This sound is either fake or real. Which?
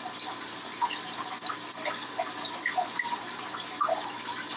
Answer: fake